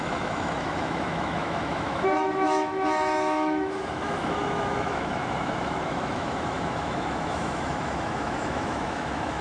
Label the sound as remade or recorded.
remade